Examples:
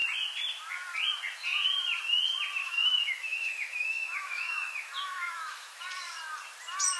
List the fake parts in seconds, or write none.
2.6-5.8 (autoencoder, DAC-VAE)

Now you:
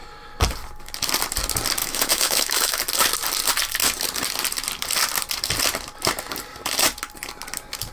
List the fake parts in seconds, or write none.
1.8-2.8 (autoencoder, DAC-VAE)

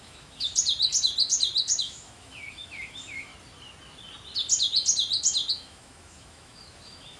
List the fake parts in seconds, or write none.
0.0-0.5 (autoencoder, DAC-VAE); 1.8-3.3; 5.5-7.2

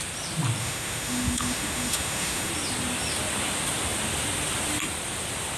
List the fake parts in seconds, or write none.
0.6-2.5 (autoencoder, DAC-VAE)

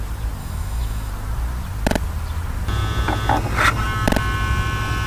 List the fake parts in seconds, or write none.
0.4-1.1 (autoencoder, DAC-VAE)